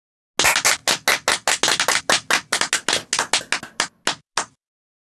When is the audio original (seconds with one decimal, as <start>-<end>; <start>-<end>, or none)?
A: 0.0-5.1